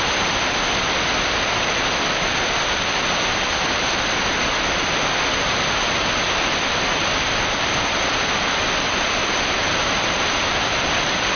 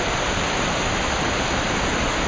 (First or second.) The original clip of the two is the first